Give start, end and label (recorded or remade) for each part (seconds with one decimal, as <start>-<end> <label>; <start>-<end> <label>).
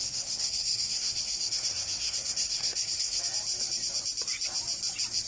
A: 0.0-3.2 remade; 3.2-5.3 recorded